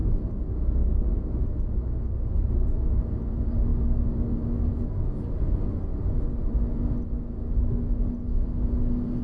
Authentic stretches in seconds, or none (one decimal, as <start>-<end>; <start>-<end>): 0.0-9.2